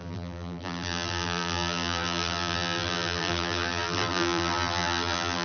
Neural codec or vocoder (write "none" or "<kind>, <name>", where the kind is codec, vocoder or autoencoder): vocoder, BigVGAN v2